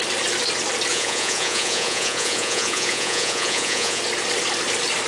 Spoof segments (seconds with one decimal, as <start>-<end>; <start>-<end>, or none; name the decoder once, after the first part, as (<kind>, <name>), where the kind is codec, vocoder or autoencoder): 0.9-4.0 (vocoder, Vocos)